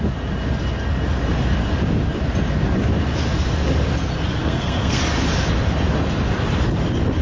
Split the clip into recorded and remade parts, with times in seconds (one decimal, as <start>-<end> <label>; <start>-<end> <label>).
0.0-4.4 recorded; 4.4-5.0 remade; 5.0-7.2 recorded